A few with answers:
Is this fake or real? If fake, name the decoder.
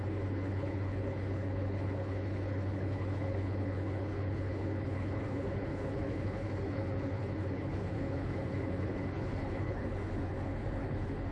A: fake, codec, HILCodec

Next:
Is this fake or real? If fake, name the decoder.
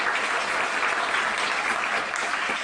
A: real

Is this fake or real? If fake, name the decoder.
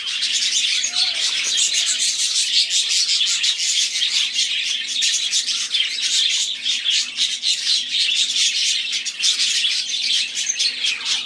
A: real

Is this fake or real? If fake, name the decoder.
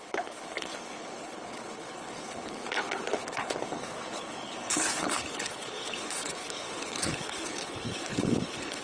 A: fake, codec, HILCodec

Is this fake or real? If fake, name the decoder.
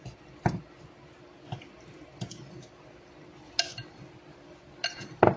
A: real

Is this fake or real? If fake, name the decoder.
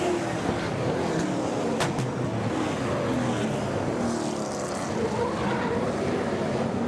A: real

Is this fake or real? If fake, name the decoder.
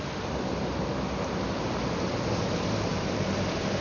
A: real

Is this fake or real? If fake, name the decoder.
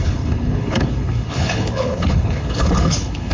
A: fake, codec, HILCodec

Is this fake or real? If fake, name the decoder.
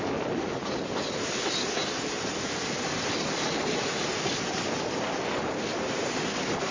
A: real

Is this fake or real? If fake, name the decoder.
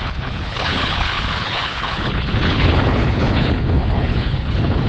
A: fake, codec, HILCodec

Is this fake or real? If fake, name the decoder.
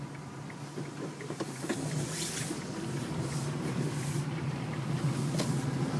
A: real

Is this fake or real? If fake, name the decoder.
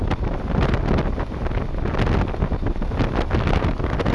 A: real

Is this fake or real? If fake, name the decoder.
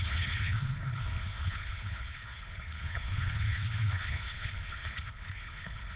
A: fake, codec, HILCodec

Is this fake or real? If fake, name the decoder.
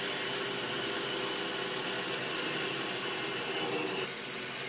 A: real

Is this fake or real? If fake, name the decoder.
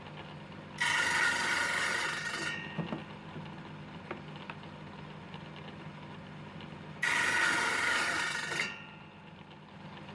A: real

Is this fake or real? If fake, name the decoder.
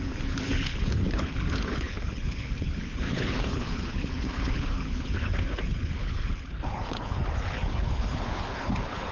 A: fake, codec, HILCodec